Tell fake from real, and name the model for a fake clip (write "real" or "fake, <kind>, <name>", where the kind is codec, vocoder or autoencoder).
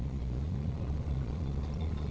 fake, vocoder, Vocos